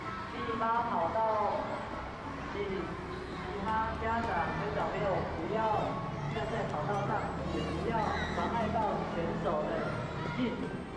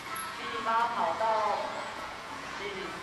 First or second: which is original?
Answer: first